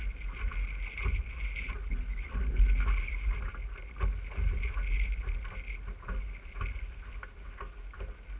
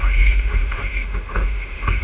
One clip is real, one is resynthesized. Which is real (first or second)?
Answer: first